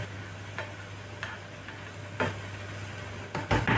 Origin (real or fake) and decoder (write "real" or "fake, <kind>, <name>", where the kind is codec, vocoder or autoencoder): real